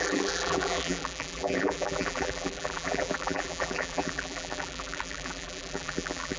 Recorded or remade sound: remade